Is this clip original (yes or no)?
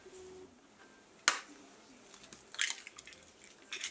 yes